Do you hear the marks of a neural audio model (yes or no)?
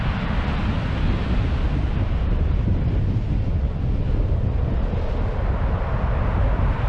no